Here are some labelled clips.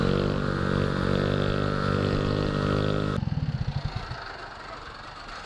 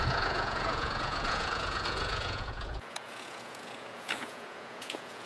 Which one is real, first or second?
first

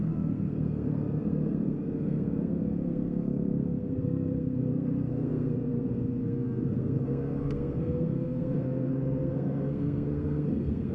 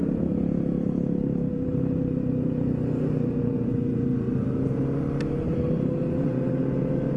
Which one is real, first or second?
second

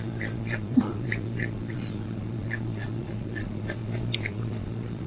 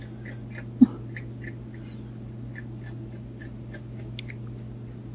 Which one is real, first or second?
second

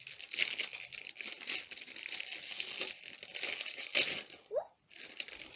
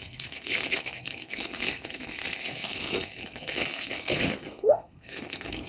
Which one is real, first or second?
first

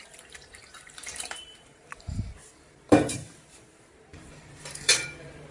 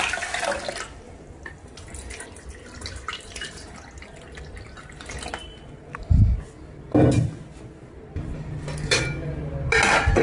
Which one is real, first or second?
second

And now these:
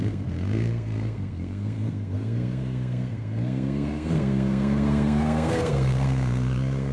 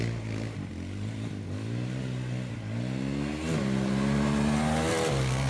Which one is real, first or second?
second